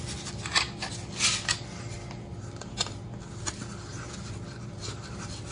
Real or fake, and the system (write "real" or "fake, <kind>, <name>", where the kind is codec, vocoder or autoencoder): real